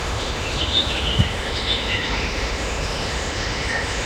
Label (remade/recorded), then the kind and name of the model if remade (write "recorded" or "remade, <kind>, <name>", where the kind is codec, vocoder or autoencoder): remade, autoencoder, DAC-VAE